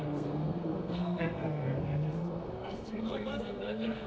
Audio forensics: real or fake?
fake